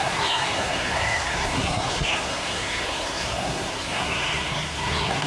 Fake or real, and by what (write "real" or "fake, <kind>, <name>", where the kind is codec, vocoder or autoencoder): fake, codec, SNAC